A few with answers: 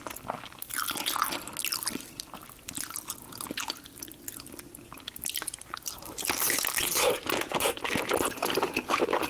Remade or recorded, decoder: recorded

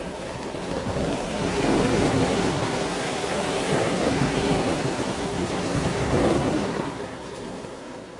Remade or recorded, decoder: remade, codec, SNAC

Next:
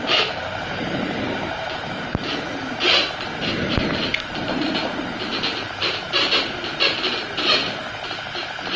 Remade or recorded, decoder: remade, vocoder, BigVGAN v2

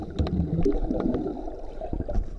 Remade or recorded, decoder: recorded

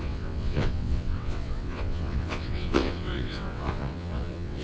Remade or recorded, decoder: remade, vocoder, WaveNeXt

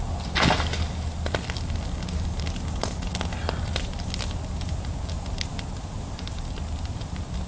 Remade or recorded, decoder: recorded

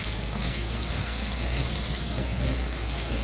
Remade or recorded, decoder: remade, codec, SNAC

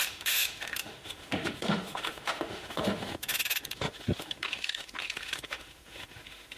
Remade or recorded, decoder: remade, autoencoder, DAC-VAE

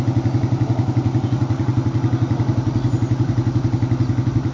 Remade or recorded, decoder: recorded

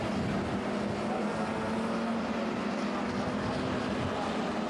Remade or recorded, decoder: recorded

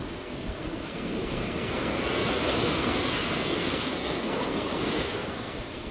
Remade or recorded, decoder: remade, codec, SNAC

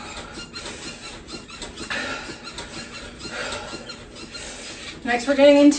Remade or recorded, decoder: recorded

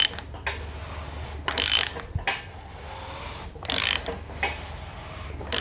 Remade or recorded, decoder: recorded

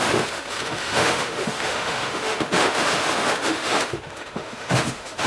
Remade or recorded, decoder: remade, autoencoder, DAC-VAE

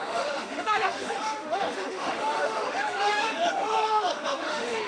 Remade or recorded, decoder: remade, autoencoder, DAC-VAE